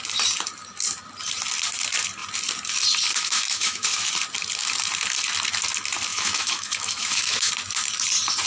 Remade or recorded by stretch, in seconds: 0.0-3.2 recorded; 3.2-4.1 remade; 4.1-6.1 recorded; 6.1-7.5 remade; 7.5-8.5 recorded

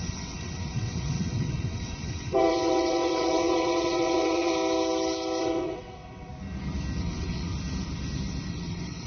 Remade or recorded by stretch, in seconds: 0.0-4.5 remade; 4.5-5.4 recorded; 5.4-6.3 remade; 6.3-7.0 recorded; 7.0-7.5 remade; 7.5-8.5 recorded; 8.5-9.1 remade

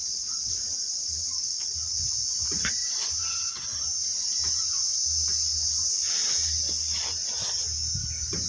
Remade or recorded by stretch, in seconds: 0.0-0.6 remade; 0.6-8.5 recorded

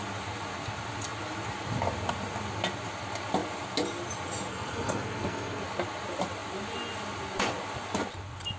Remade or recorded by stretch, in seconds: 0.0-4.5 recorded; 4.5-5.6 remade; 5.6-8.6 recorded

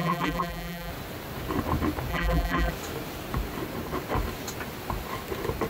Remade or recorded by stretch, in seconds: 0.0-0.9 remade; 0.9-2.1 recorded; 2.1-2.7 remade; 2.7-5.7 recorded

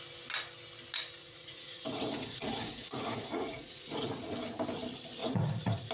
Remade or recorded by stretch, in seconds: 0.0-1.2 recorded; 1.2-4.3 remade; 4.3-5.2 recorded; 5.2-5.9 remade

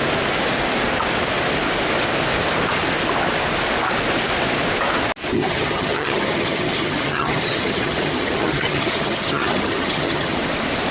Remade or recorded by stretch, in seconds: 0.0-5.3 recorded; 5.3-10.4 remade; 10.4-10.9 recorded